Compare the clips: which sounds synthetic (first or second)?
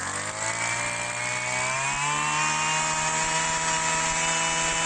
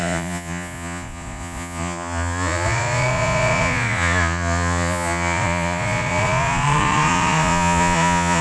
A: second